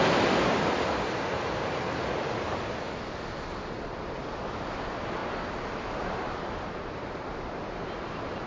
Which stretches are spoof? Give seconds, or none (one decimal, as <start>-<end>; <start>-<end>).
5.2-7.1